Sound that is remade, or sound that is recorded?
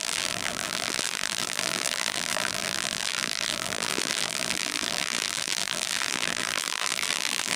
remade